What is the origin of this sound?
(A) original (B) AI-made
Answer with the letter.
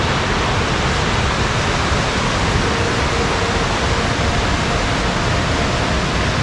A